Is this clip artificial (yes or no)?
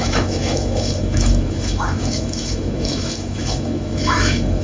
yes